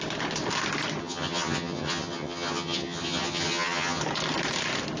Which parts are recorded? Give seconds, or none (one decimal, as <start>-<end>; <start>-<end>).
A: 0.0-1.0; 4.0-5.0